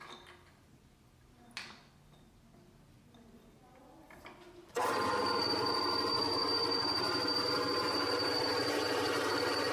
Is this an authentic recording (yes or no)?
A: yes